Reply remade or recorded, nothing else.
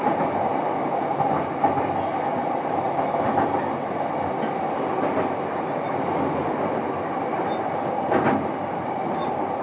recorded